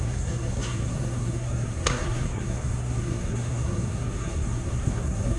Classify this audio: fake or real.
fake